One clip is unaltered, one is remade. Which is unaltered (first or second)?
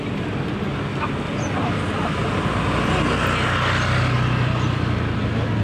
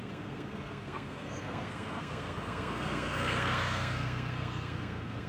first